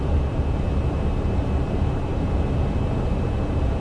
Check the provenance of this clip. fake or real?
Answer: fake